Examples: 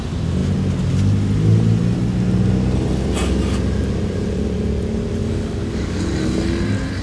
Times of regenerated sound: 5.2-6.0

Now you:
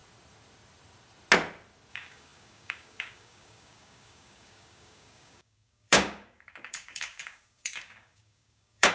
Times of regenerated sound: 1.9-8.9

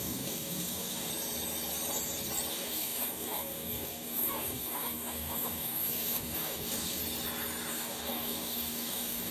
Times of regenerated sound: 0.0-1.1; 2.5-7.0; 7.7-9.3

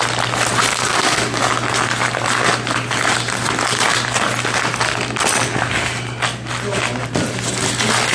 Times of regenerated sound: 0.7-1.4

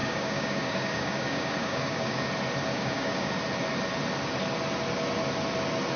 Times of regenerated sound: 0.0-2.3; 2.7-3.3

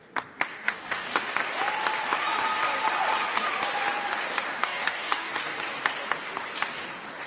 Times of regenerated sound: 0.5-1.3; 4.6-5.3

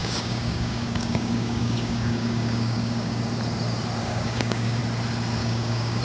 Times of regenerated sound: 0.0-3.2; 4.0-4.8; 5.4-6.0